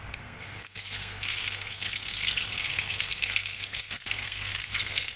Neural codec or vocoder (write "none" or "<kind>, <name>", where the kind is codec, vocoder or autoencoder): codec, SNAC